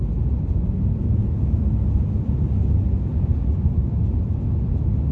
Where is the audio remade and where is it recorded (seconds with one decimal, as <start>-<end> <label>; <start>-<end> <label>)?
0.0-1.0 recorded; 1.0-1.7 remade; 1.7-3.1 recorded; 3.1-3.6 remade; 3.6-5.1 recorded